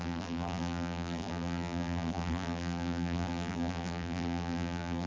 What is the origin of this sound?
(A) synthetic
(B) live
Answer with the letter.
A